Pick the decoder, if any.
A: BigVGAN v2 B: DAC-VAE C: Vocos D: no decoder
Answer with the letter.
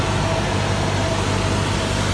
D